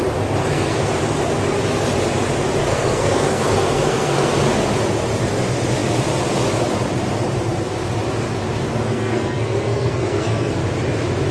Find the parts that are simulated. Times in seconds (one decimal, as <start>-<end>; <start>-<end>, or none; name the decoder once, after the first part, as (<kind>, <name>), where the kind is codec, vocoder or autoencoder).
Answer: 0.4-0.9 (codec, SNAC); 2.6-4.3; 8.9-10.6